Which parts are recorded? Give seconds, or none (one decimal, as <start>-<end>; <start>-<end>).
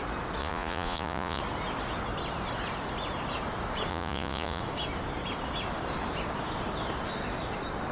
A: 0.0-0.4; 1.4-3.9; 4.6-7.9